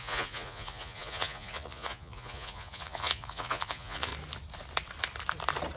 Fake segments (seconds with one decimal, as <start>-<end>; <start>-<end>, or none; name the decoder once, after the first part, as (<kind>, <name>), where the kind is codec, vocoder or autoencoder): 0.0-4.1 (vocoder, Vocos)